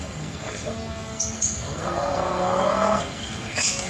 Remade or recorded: remade